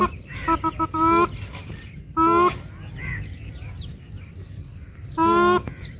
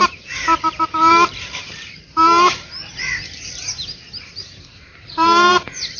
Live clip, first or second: first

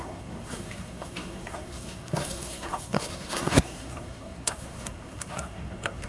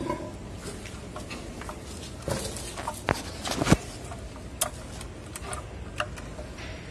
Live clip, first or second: second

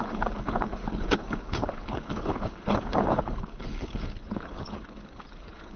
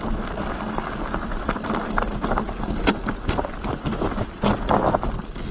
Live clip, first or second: second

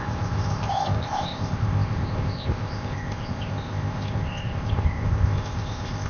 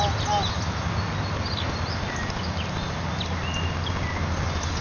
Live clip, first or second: second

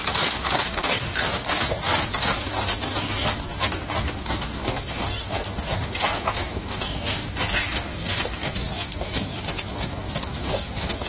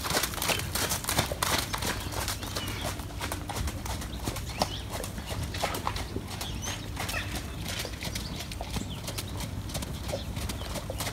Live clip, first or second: second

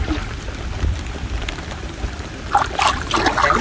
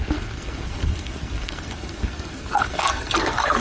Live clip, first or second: first